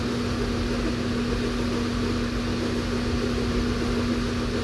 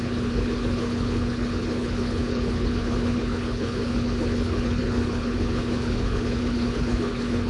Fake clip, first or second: second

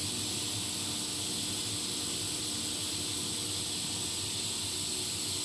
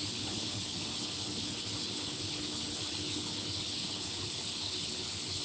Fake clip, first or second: second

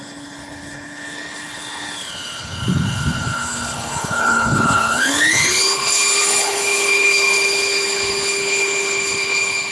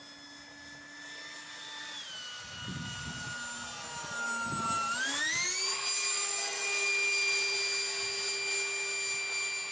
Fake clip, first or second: first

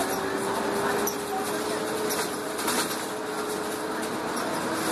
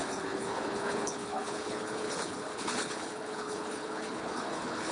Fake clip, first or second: second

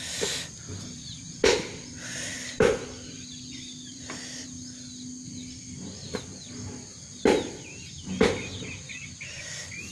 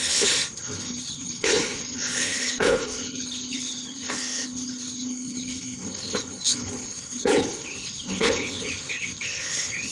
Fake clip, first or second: second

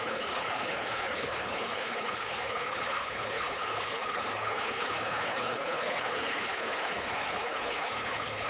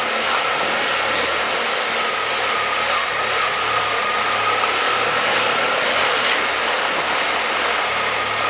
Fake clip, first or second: first